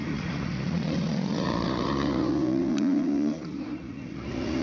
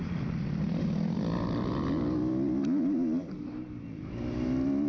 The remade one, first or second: first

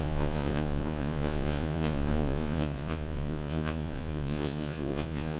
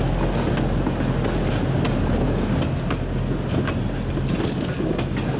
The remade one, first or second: first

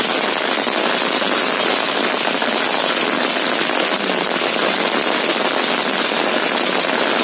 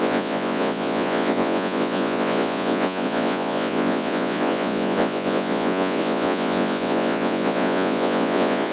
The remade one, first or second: second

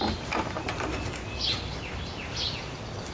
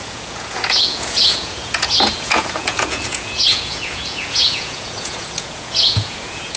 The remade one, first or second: second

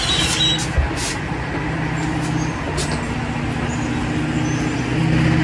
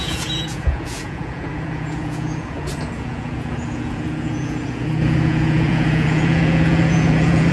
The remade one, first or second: second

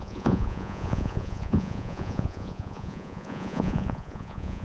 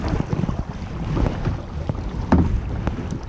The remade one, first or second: first